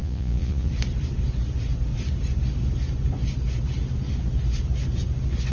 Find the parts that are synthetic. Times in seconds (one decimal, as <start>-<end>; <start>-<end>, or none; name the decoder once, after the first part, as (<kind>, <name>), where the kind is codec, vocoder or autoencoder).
0.0-0.7 (vocoder, Vocos)

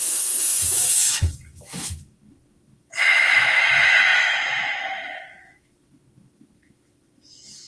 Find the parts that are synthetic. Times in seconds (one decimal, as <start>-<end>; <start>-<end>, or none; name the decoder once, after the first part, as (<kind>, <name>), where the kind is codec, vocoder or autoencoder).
0.0-7.7 (autoencoder, DAC-VAE)

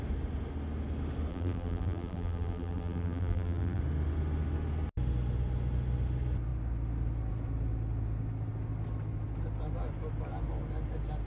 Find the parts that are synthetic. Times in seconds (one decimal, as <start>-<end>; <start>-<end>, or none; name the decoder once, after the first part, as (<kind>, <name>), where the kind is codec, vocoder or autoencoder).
1.3-3.8 (vocoder, BigVGAN v2)

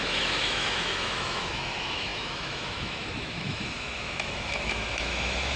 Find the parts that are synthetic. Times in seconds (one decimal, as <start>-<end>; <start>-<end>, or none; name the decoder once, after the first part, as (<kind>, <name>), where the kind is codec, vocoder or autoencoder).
0.0-5.6 (autoencoder, DAC-VAE)

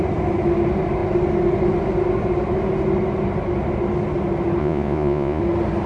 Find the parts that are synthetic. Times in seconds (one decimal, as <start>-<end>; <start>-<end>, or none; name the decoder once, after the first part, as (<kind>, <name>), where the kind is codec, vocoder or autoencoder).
4.6-5.4 (vocoder, Vocos)

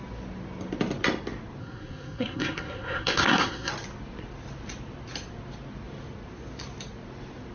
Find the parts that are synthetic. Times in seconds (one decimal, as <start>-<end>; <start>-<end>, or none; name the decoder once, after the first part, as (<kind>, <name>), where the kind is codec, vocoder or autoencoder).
1.6-3.7 (codec, SNAC)